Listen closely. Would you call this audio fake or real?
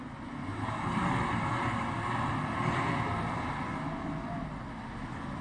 real